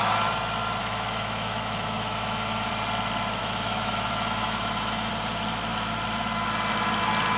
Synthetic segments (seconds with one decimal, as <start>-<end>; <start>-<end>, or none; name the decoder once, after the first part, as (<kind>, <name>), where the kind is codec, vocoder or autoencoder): 0.8-2.7 (autoencoder, DAC-VAE); 3.4-5.1